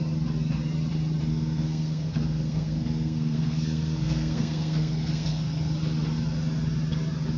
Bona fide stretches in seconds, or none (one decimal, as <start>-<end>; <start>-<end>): 0.0-1.3; 5.7-7.4